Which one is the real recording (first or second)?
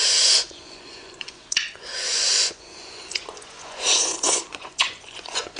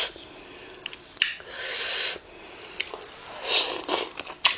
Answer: second